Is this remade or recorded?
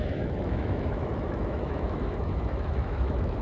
remade